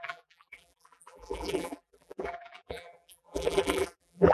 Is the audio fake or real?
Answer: fake